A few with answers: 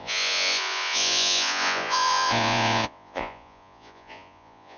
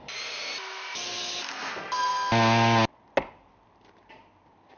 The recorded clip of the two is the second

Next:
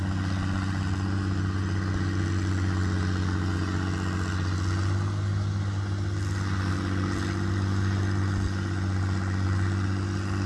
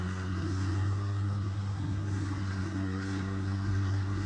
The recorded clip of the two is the first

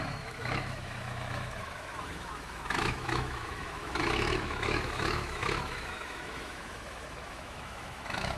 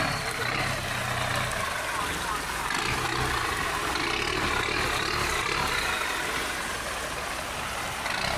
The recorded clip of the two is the second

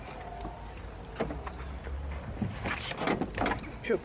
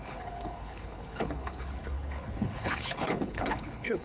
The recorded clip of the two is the first